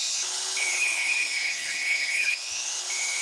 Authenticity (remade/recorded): remade